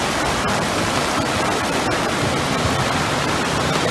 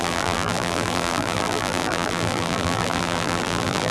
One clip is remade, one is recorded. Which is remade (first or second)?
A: second